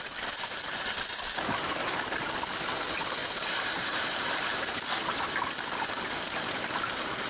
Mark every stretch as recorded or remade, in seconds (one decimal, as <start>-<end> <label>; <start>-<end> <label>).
0.0-1.8 recorded; 1.8-2.3 remade; 2.3-3.2 recorded; 3.2-5.2 remade; 5.2-7.3 recorded